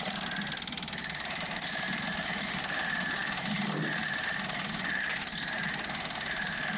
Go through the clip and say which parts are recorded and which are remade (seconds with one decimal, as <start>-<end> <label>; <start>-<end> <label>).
0.0-1.0 recorded; 1.0-2.0 remade; 2.0-6.8 recorded